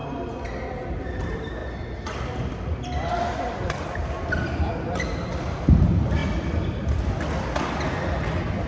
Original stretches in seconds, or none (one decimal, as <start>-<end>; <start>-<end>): 0.0-8.7